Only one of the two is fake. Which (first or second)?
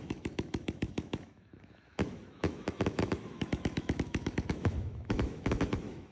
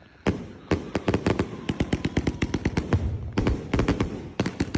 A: first